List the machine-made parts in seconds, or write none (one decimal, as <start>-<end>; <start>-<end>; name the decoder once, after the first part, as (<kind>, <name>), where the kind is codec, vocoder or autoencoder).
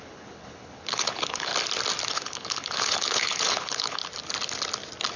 0.0-1.5 (codec, HILCodec); 2.1-4.0